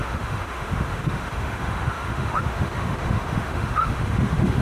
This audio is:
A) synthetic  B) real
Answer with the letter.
A